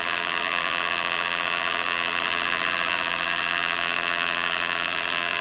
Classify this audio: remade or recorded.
remade